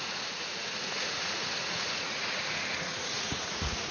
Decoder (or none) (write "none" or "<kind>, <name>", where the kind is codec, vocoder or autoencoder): vocoder, Vocos